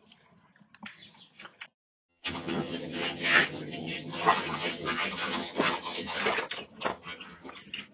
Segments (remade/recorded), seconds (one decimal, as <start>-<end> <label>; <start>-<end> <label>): 0.0-2.1 recorded; 2.1-6.2 remade; 6.2-6.9 recorded; 6.9-7.5 remade; 7.5-7.9 recorded